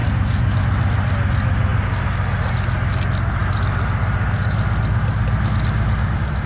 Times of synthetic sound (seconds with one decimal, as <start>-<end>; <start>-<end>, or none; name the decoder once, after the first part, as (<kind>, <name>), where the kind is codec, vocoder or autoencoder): none